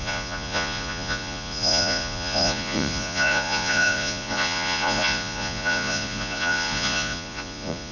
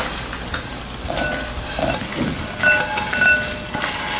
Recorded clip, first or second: second